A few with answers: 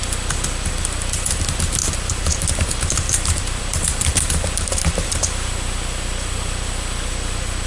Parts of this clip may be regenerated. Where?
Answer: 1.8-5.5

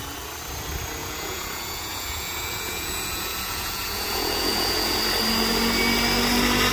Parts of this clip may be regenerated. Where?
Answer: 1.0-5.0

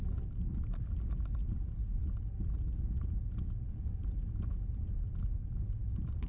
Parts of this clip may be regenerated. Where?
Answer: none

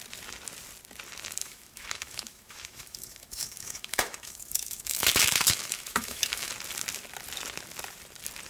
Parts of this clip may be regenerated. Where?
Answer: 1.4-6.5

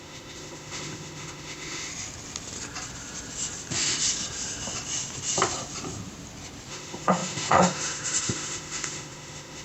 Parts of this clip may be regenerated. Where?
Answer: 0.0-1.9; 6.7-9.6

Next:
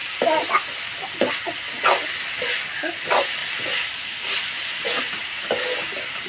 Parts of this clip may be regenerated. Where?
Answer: 4.7-5.4

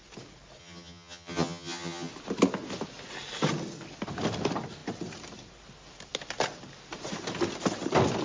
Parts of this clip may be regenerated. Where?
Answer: 0.6-2.1